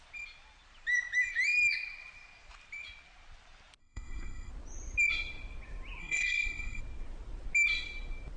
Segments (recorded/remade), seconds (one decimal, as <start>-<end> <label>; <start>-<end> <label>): 0.0-3.8 recorded; 3.8-4.5 remade; 4.5-6.0 recorded; 6.0-6.8 remade; 6.8-8.4 recorded